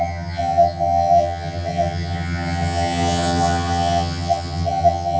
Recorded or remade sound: remade